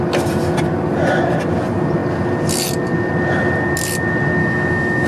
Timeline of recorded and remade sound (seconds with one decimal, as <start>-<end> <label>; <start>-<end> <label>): 0.0-4.4 recorded; 4.4-5.1 remade